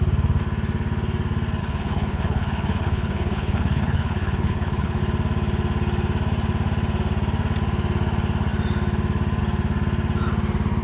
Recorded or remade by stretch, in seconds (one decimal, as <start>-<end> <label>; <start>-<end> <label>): 0.0-1.6 recorded; 1.6-5.0 remade; 5.0-10.8 recorded